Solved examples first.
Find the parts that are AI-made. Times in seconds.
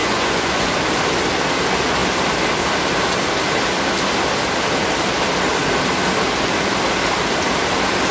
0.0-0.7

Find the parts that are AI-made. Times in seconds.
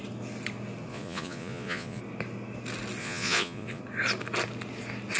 0.9-2.0; 3.0-3.8